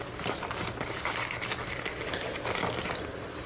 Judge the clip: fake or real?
real